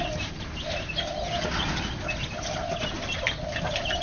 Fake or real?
real